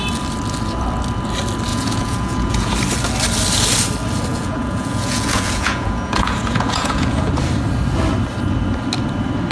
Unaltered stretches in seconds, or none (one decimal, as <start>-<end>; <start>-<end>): 0.0-1.7; 2.7-4.3; 7.3-9.5